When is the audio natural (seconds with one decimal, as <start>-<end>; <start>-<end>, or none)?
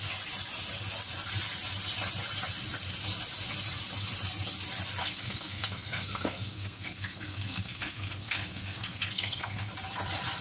0.0-5.0; 9.7-10.4